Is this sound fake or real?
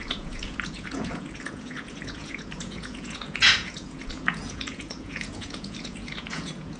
fake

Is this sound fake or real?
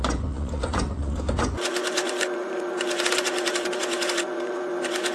fake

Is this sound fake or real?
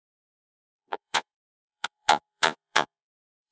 fake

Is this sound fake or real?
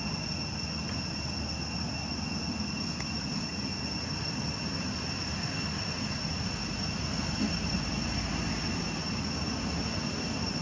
real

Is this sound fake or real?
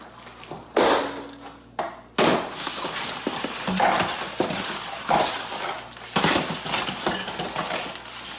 real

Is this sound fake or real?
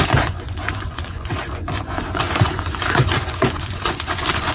fake